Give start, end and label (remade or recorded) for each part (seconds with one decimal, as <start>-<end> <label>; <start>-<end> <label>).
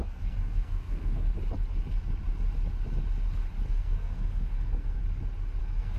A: 0.0-1.3 remade; 1.3-3.7 recorded; 3.7-5.0 remade; 5.0-5.6 recorded; 5.6-6.0 remade